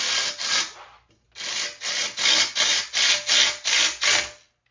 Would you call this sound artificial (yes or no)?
no